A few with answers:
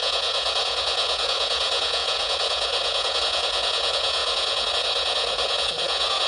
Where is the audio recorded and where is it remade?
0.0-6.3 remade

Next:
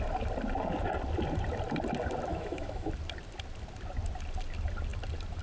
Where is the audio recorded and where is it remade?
0.0-2.3 recorded; 2.3-2.9 remade; 2.9-5.4 recorded

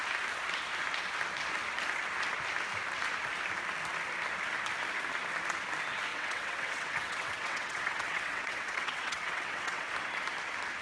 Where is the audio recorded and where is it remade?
0.0-6.1 recorded; 6.1-9.9 remade; 9.9-10.8 recorded

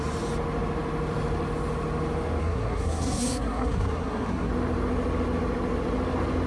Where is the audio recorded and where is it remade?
0.0-2.4 recorded; 2.4-4.5 remade; 4.5-6.5 recorded